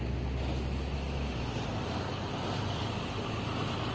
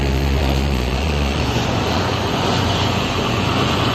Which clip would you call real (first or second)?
first